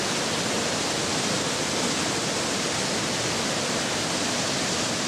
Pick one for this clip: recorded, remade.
recorded